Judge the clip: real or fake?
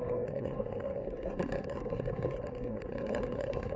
fake